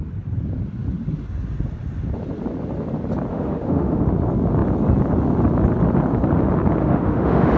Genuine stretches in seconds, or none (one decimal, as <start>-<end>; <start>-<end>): 0.0-3.3; 4.0-6.8